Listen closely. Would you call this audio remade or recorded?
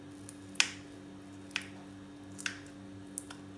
recorded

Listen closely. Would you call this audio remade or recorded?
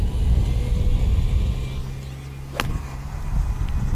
recorded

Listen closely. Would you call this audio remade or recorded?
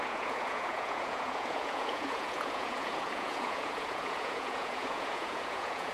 remade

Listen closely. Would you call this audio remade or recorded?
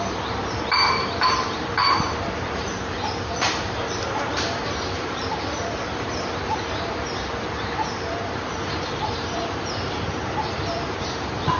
remade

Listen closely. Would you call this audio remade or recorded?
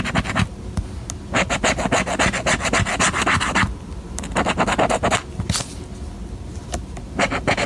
recorded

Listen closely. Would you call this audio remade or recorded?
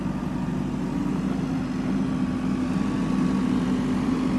recorded